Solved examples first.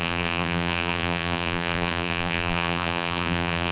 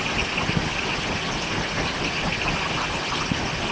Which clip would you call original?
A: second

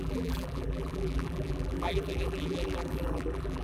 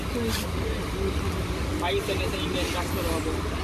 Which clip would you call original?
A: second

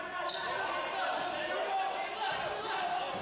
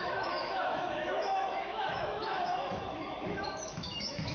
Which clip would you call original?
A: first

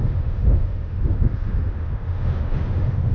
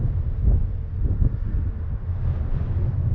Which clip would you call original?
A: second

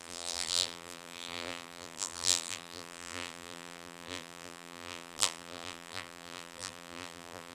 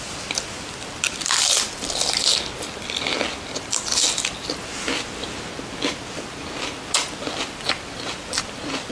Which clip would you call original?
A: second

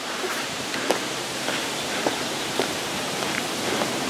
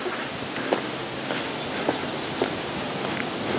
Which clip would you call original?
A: second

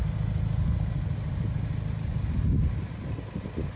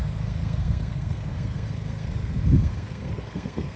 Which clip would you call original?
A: first